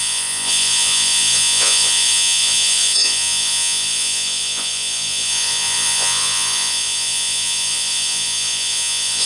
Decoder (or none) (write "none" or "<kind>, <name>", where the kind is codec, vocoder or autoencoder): vocoder, Vocos